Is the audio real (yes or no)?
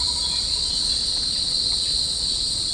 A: no